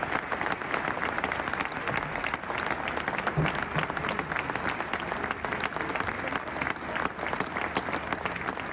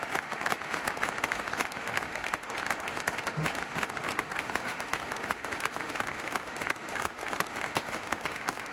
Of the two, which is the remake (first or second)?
second